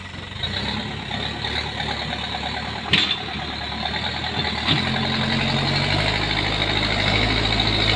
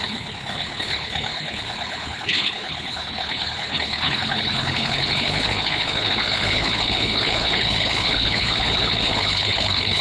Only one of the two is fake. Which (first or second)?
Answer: second